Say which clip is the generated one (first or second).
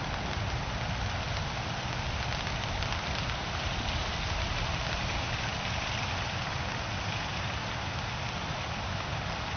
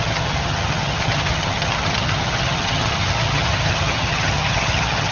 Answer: second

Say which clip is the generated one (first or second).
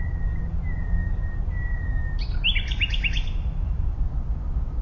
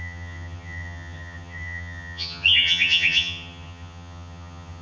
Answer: second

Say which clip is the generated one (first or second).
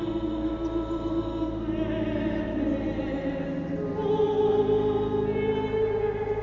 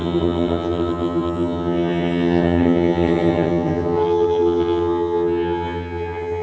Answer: second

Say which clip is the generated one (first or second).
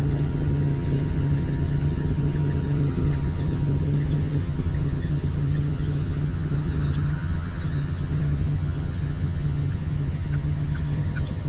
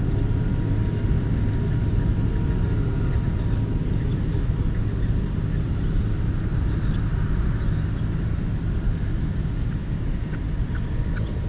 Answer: first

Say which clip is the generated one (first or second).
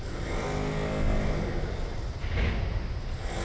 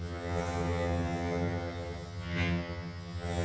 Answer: second